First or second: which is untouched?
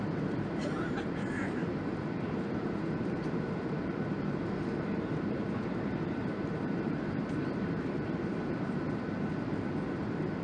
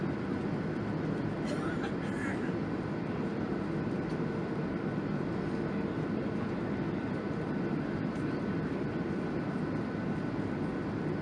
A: second